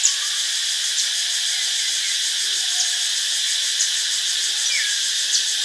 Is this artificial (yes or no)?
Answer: no